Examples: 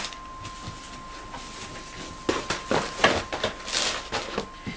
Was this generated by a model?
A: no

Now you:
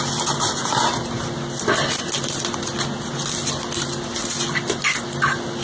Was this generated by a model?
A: no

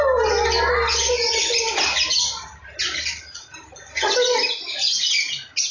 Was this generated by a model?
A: no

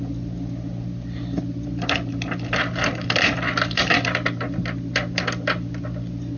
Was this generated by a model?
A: no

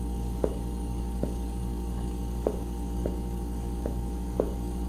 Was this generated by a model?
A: yes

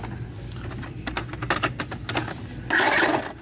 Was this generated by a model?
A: no